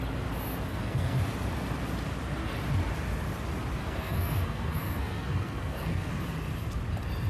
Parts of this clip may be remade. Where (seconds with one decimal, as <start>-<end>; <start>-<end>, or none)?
0.7-1.2; 3.8-6.1